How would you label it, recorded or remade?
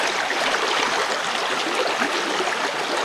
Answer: recorded